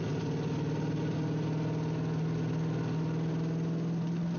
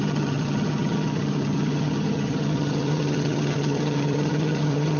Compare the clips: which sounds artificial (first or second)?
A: second